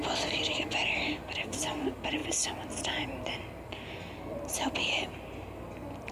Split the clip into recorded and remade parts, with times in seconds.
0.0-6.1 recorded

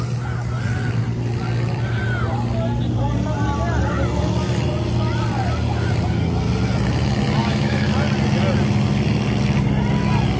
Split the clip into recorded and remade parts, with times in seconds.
0.0-7.4 recorded; 7.4-7.9 remade; 7.9-10.4 recorded

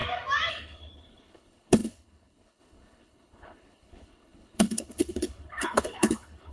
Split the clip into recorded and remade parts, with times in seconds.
0.0-0.5 recorded; 0.5-6.5 remade

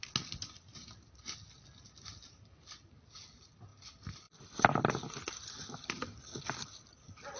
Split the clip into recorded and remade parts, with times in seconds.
0.0-7.4 recorded

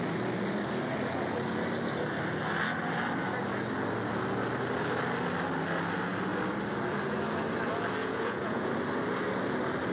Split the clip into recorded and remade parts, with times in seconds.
0.0-8.0 recorded; 8.0-8.7 remade; 8.7-9.9 recorded

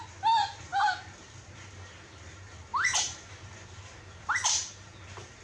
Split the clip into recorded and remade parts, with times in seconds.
0.0-5.4 recorded